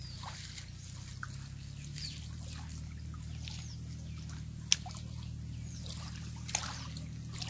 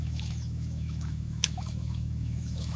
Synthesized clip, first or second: second